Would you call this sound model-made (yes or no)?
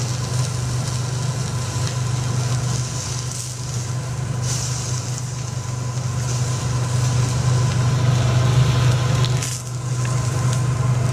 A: no